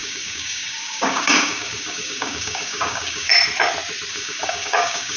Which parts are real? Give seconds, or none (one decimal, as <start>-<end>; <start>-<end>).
3.3-4.1